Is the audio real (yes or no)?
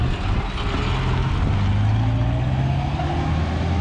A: yes